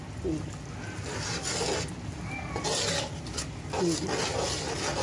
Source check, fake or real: real